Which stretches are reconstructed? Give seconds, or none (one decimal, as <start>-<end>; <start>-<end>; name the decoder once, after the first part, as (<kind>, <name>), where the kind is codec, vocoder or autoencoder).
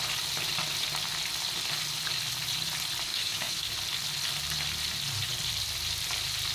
3.1-3.7 (autoencoder, DAC-VAE)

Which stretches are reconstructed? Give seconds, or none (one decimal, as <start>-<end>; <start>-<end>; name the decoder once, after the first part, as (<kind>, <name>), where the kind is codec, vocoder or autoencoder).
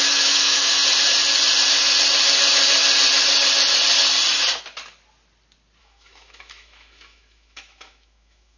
0.0-0.7 (autoencoder, DAC-VAE); 5.8-8.6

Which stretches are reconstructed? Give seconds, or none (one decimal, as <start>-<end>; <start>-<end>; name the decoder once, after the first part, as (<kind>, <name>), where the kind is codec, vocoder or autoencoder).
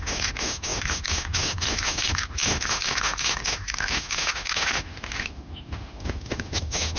0.0-7.0 (autoencoder, DAC-VAE)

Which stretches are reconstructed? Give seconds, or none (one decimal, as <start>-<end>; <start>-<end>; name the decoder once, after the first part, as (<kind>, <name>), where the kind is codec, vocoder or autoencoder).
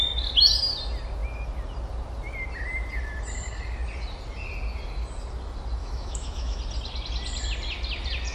5.8-6.6 (autoencoder, DAC-VAE)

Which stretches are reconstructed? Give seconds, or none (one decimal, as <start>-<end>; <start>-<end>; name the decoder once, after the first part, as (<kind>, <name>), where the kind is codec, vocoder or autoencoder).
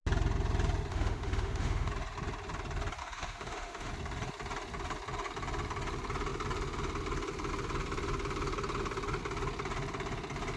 0.9-1.9 (autoencoder, DAC-VAE); 3.0-3.9